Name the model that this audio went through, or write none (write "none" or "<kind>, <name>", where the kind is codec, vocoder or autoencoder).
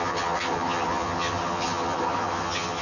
vocoder, HiFi-GAN